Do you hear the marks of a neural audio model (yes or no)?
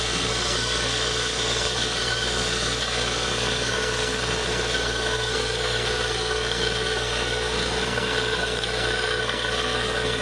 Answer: yes